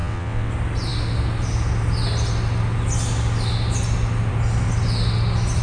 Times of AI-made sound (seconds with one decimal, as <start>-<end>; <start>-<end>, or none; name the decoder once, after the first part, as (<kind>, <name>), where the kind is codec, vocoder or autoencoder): 0.0-0.5 (vocoder, WaveNeXt)